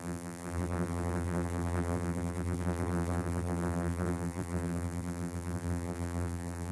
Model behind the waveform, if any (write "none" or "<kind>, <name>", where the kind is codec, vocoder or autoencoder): vocoder, BigVGAN v2